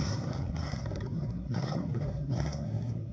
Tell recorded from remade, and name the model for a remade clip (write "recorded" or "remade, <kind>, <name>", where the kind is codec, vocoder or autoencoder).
remade, codec, SNAC